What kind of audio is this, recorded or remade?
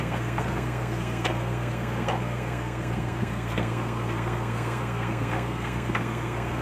remade